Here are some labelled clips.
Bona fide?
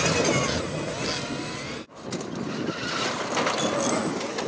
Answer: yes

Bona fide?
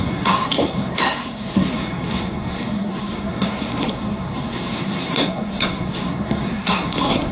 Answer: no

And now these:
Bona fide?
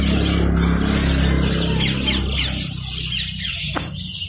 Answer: yes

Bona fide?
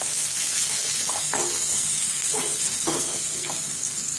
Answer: no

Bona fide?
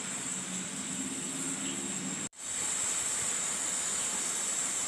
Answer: yes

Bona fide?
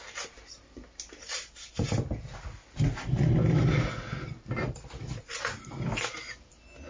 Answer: yes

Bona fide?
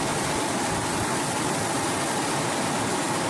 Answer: yes